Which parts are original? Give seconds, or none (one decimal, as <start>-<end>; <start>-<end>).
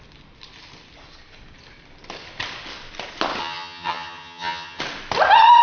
0.0-3.4; 4.8-5.6